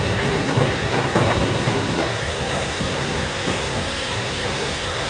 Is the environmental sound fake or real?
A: fake